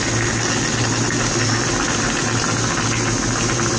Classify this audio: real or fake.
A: real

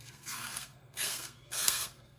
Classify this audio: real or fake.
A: fake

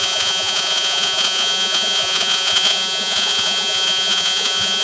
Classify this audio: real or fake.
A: fake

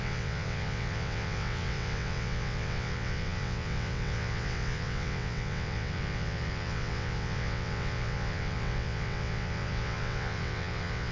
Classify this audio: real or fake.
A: fake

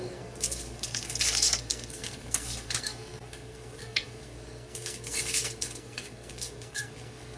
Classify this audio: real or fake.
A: fake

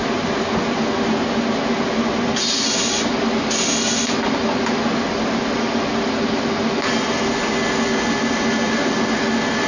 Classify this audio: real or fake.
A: real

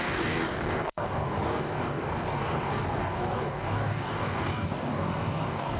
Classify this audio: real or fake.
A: fake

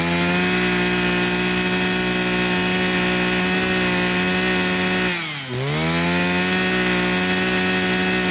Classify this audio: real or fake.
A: real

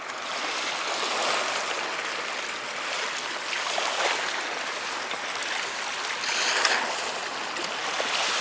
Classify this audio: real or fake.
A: real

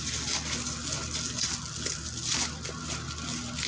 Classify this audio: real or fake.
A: real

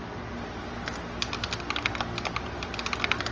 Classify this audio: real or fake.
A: real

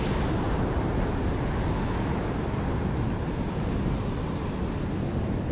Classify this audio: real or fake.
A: real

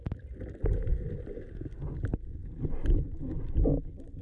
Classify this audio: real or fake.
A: real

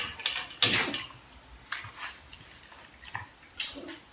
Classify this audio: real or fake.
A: real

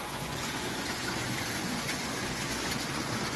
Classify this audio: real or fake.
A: fake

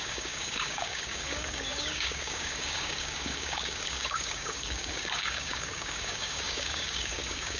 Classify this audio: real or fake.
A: fake